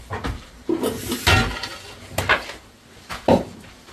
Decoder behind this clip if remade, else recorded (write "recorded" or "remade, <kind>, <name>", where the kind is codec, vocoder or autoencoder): recorded